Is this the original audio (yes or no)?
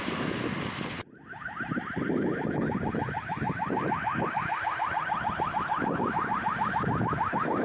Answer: yes